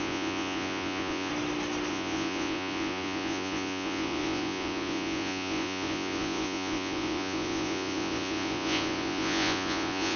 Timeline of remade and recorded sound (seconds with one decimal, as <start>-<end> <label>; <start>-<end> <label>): 0.0-1.3 remade; 1.3-1.9 recorded; 1.9-10.2 remade